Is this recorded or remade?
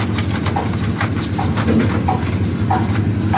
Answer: recorded